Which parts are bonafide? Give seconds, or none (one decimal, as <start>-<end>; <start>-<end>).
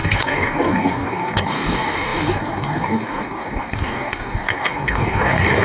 none